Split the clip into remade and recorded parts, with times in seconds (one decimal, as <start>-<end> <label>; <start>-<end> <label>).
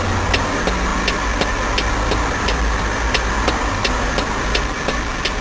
0.0-5.4 recorded